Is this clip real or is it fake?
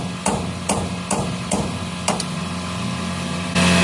real